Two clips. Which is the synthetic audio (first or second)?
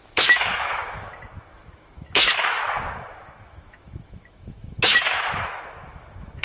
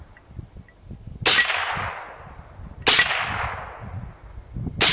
first